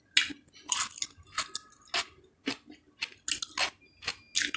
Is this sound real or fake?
real